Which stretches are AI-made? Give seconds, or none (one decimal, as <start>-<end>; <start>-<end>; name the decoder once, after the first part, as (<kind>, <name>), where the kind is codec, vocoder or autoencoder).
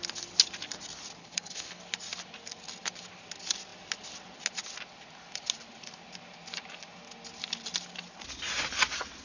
1.2-1.8 (codec, HILCodec)